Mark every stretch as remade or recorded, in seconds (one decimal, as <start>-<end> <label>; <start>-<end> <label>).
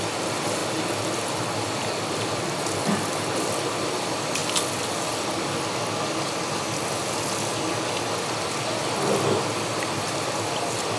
0.0-11.0 recorded